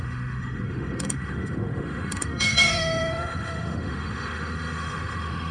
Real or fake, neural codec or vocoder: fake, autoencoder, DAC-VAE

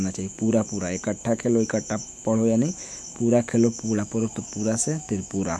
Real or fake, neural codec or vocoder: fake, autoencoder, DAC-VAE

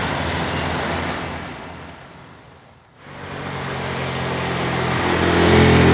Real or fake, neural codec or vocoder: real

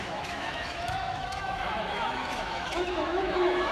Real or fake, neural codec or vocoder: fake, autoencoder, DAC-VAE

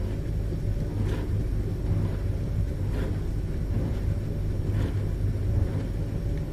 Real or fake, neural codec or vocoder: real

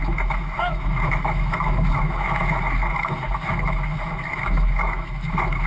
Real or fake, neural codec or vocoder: fake, autoencoder, DAC-VAE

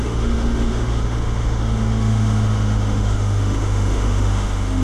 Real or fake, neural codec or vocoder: fake, autoencoder, DAC-VAE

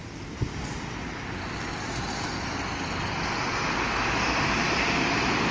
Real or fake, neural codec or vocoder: real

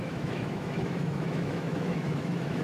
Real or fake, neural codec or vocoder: fake, autoencoder, DAC-VAE